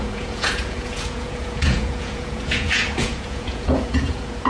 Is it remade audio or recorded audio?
remade